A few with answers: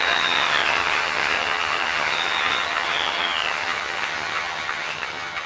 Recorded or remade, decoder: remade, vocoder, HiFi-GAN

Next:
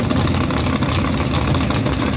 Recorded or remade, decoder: recorded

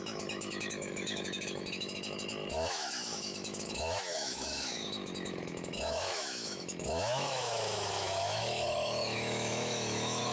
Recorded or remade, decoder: remade, autoencoder, DAC-VAE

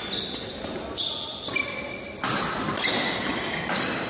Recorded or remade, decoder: recorded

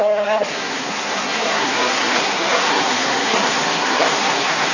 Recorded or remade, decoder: remade, codec, SNAC